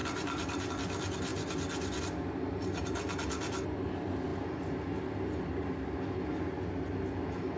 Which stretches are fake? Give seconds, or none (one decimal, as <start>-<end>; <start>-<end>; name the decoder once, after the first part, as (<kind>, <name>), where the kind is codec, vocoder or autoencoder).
0.0-0.7 (vocoder, BigVGAN v2)